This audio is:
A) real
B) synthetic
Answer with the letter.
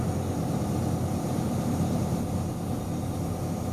A